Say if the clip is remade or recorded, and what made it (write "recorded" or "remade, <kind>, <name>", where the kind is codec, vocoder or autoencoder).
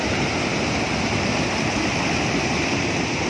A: recorded